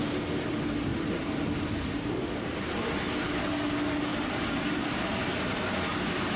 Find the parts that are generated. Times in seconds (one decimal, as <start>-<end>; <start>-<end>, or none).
4.1-4.8; 5.2-6.4